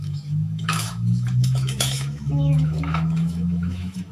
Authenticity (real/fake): fake